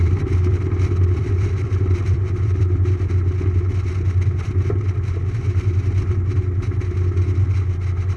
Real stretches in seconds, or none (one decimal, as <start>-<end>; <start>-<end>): 3.1-8.2